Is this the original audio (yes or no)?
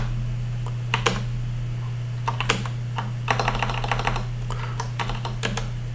yes